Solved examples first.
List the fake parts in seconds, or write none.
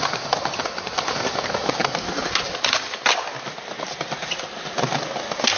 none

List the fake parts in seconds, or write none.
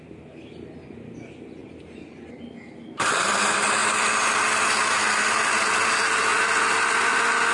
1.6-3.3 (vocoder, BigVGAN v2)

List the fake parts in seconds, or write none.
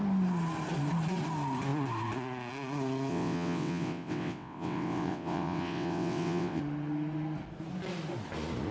3.1-6.6 (vocoder, WaveNeXt)